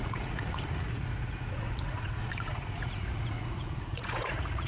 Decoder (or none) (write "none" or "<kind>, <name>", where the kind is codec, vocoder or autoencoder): vocoder, Vocos